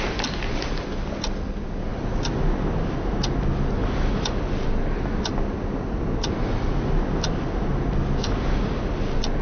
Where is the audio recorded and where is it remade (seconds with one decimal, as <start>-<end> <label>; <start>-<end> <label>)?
0.0-9.4 recorded